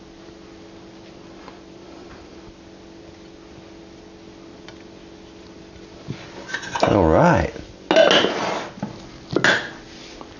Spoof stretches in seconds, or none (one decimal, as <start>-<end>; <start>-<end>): none